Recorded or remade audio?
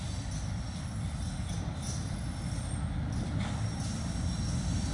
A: recorded